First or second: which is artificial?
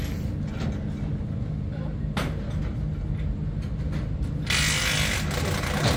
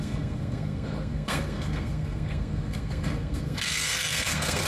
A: second